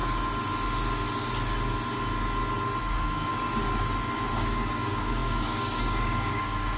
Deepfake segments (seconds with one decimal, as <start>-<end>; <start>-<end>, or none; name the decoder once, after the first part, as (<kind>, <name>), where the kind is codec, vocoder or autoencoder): 2.8-3.3 (codec, DAC); 4.3-6.8